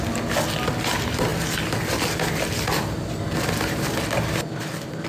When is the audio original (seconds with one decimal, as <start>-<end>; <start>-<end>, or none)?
0.0-5.1